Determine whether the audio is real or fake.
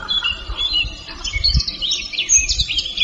fake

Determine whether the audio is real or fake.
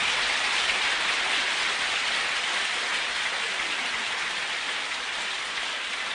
real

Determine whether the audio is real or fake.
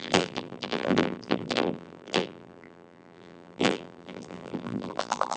fake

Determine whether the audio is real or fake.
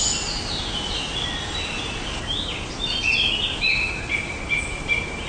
real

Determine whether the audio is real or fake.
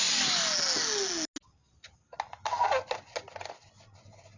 real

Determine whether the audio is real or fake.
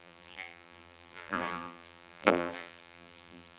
fake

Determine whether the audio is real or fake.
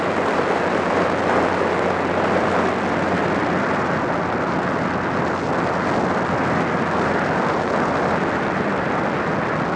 real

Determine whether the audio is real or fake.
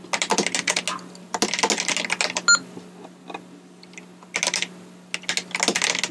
real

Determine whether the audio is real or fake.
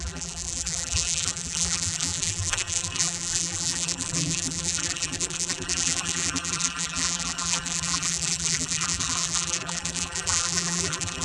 fake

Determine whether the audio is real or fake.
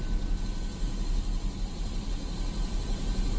real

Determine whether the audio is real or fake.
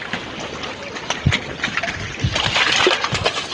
real